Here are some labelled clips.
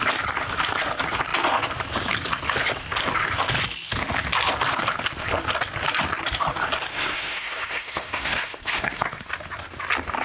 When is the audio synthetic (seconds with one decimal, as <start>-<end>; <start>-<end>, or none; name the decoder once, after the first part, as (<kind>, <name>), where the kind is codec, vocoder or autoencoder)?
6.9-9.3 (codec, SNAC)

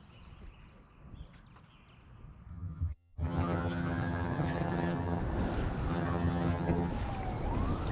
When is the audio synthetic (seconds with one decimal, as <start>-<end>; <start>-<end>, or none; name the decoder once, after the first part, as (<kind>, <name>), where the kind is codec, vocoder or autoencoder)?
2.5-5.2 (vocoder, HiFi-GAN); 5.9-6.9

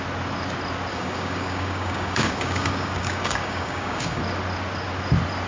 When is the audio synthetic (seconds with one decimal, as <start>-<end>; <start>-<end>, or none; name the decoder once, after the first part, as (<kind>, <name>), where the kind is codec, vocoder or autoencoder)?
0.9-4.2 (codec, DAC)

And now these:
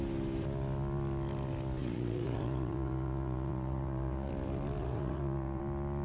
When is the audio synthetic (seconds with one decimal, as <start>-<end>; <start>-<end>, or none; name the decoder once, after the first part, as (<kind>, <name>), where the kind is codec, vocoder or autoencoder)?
1.8-4.3 (vocoder, Vocos); 4.8-5.6